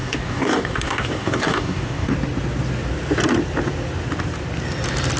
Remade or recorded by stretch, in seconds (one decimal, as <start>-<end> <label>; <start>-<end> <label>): 0.0-2.1 remade; 2.1-5.2 recorded